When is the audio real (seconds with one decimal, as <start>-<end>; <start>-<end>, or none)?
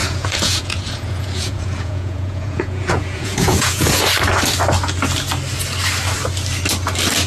4.0-7.3